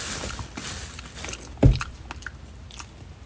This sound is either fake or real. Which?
real